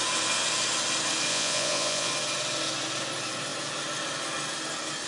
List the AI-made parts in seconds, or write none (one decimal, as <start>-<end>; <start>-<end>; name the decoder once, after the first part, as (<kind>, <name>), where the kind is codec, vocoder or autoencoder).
1.3-2.1 (vocoder, Vocos)